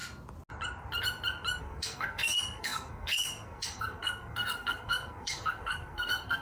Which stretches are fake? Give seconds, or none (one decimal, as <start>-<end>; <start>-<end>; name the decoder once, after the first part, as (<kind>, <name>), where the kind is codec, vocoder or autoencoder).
1.6-6.4 (codec, SNAC)